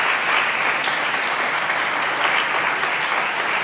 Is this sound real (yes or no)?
yes